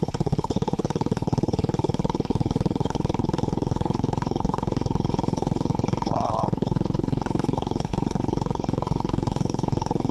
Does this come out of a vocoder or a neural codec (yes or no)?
yes